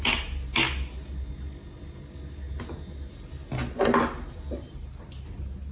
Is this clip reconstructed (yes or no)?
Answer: no